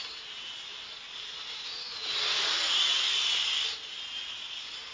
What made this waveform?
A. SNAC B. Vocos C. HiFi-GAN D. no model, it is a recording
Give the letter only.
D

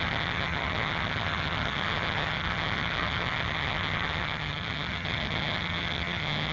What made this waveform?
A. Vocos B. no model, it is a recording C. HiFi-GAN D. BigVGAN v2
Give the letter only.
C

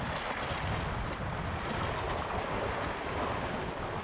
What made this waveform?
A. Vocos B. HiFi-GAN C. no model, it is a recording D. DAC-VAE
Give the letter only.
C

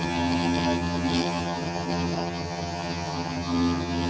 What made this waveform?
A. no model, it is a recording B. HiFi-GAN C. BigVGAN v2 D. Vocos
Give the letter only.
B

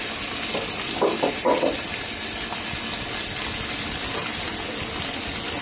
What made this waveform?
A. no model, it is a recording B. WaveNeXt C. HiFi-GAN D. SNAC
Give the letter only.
A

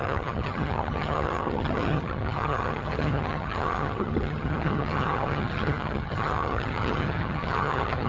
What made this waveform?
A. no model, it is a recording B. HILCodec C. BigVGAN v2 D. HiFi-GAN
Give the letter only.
D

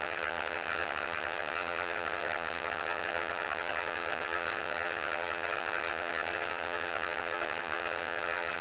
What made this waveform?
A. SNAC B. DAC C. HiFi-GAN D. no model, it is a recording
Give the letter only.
C